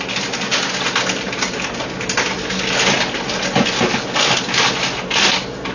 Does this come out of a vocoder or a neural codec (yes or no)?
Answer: no